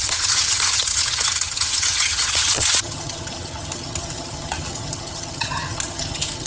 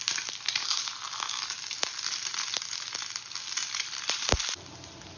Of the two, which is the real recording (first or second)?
second